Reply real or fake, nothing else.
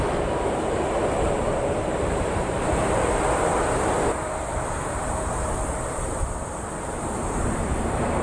fake